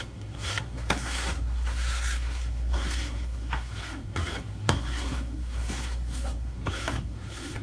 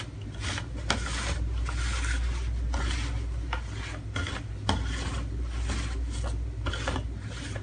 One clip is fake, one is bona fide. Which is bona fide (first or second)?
second